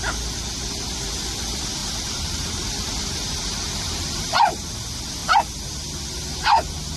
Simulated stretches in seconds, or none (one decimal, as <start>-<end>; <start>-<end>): 1.8-4.7

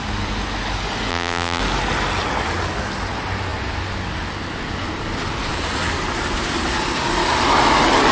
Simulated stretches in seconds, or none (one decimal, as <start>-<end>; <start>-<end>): 1.1-1.6

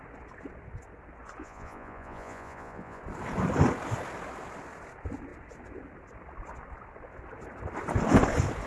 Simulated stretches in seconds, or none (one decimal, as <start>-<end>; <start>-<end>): 1.4-3.0

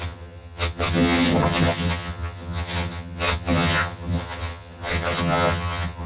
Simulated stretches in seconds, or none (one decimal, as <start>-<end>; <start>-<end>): 0.0-6.1